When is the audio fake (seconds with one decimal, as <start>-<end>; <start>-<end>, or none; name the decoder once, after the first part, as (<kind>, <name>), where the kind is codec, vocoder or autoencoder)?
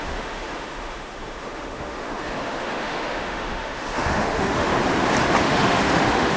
0.0-4.7 (autoencoder, DAC-VAE); 5.4-6.4